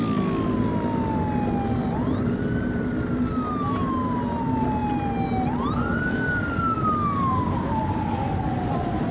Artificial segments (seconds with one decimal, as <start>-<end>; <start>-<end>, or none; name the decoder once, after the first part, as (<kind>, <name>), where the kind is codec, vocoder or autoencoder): none